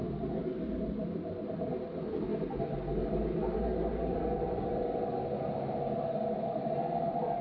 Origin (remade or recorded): recorded